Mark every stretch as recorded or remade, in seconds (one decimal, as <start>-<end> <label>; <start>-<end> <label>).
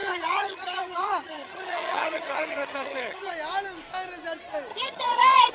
0.0-3.3 remade; 3.3-4.7 recorded; 4.7-5.5 remade